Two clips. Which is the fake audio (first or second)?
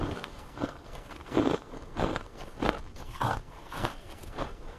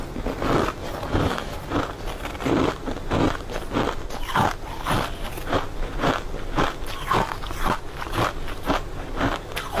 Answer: first